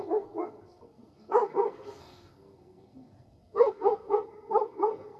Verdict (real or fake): fake